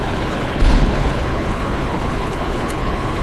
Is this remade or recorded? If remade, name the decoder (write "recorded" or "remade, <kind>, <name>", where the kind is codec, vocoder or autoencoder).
remade, codec, HILCodec